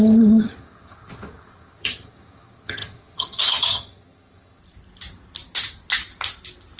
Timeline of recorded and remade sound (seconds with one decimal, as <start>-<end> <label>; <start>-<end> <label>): 0.0-4.6 remade; 4.6-6.8 recorded